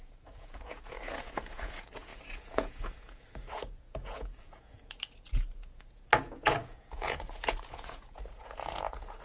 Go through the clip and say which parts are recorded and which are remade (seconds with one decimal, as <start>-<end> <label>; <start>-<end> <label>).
0.0-9.2 remade